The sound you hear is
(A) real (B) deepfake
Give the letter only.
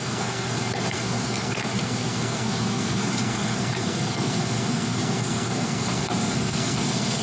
B